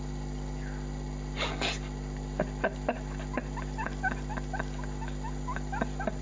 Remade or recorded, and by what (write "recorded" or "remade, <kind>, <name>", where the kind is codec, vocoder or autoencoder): recorded